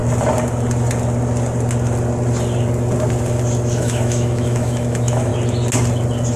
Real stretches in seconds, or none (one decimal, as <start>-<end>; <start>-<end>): 0.0-3.8; 5.3-6.4